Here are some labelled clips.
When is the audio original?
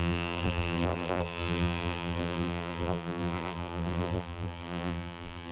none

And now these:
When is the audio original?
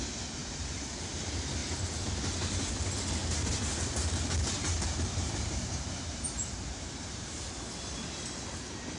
0.0-0.4; 0.9-1.6; 2.7-3.2; 7.6-9.0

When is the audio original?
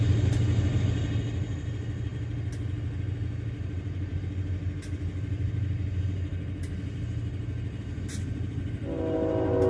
0.0-9.7